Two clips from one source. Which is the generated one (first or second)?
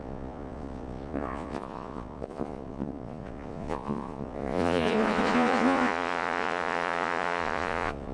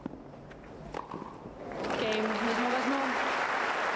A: first